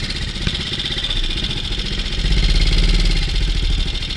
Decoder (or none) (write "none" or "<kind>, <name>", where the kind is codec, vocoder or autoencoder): none